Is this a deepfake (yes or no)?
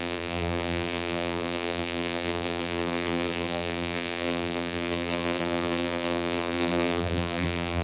yes